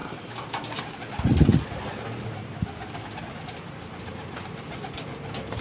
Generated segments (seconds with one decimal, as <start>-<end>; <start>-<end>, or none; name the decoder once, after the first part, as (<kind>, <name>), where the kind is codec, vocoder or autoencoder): none